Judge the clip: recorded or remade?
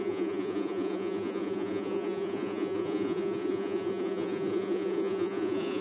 remade